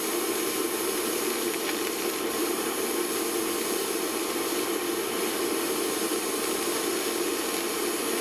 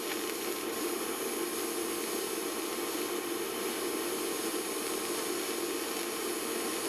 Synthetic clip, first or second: first